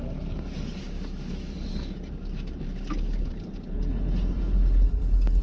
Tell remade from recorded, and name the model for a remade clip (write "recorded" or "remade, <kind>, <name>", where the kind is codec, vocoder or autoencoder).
recorded